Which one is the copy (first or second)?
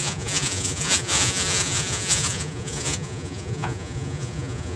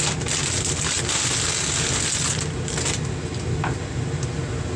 first